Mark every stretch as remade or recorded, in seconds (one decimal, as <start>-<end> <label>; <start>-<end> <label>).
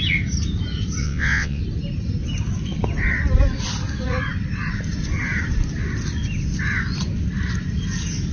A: 0.0-1.0 recorded; 1.0-1.6 remade; 1.6-8.3 recorded